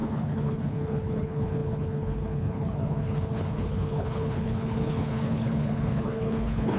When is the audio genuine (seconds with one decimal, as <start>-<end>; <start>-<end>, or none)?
none